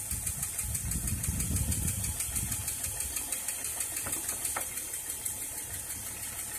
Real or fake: real